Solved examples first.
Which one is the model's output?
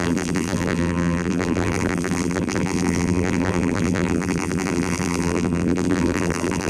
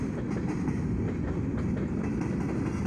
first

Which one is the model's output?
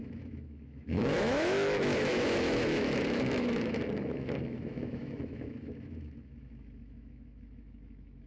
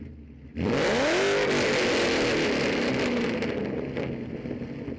first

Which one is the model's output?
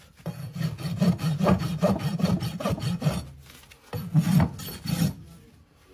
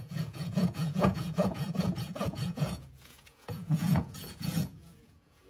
second